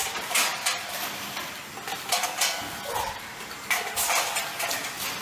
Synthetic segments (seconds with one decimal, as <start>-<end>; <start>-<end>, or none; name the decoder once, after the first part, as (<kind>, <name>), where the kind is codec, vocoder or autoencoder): none